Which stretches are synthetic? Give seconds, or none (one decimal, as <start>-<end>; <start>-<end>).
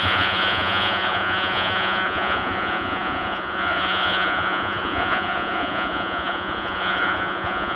0.0-7.8